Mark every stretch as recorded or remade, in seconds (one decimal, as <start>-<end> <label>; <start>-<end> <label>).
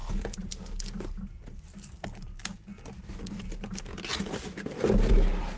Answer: 0.0-5.6 recorded